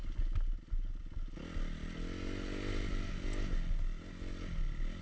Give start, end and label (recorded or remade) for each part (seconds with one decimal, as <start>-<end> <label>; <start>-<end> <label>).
0.0-5.0 recorded

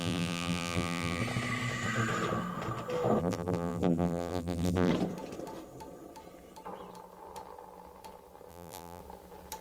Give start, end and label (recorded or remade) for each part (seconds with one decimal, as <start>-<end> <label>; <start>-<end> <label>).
0.0-1.2 remade; 1.2-3.2 recorded; 3.2-4.9 remade; 4.9-8.5 recorded; 8.5-9.0 remade; 9.0-9.6 recorded

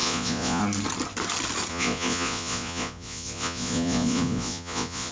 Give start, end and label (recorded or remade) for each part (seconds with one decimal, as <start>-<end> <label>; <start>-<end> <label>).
0.0-0.6 remade; 0.6-1.7 recorded; 1.7-5.1 remade

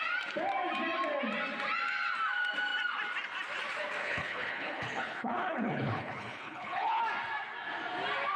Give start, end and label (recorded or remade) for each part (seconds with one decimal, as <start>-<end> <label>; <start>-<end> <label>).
0.0-4.0 recorded; 4.0-7.0 remade; 7.0-8.4 recorded

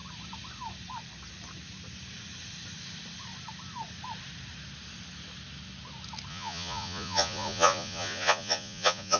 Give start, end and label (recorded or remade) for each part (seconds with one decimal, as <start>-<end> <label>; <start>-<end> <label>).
0.0-6.3 recorded; 6.3-9.2 remade

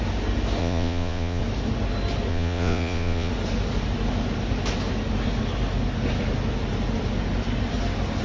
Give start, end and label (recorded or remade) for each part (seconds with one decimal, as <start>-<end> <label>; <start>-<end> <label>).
0.0-0.6 recorded; 0.6-1.4 remade; 1.4-2.3 recorded; 2.3-3.3 remade; 3.3-8.2 recorded